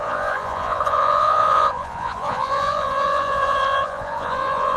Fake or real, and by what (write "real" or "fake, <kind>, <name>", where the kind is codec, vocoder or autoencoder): fake, vocoder, Vocos